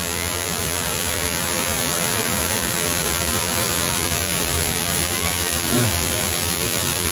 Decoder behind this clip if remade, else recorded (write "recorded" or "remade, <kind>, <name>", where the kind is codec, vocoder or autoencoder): remade, vocoder, BigVGAN v2